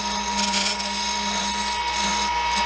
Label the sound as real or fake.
real